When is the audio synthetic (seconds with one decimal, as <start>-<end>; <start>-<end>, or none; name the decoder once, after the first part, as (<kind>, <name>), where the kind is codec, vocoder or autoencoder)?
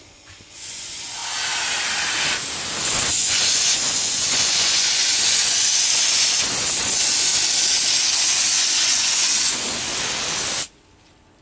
0.0-1.2 (vocoder, Vocos); 2.8-7.3; 8.2-9.9